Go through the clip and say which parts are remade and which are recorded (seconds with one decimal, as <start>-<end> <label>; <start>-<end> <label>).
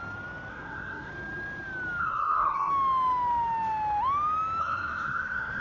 0.0-0.5 recorded; 0.5-1.1 remade; 1.1-2.0 recorded; 2.0-2.7 remade; 2.7-4.6 recorded; 4.6-5.6 remade